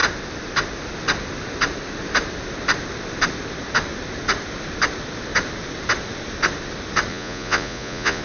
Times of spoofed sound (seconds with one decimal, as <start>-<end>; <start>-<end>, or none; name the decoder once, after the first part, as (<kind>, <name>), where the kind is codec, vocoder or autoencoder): 7.1-8.2 (vocoder, Vocos)